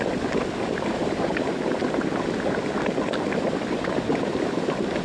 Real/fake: real